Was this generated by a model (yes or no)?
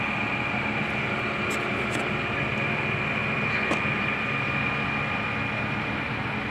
no